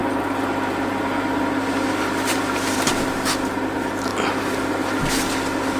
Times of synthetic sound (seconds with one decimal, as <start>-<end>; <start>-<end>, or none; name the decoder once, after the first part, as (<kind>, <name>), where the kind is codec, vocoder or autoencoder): none